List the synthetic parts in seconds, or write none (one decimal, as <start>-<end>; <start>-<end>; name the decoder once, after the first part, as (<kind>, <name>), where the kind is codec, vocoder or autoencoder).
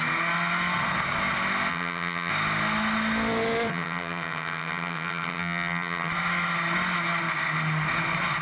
1.7-2.3 (vocoder, HiFi-GAN); 3.7-6.1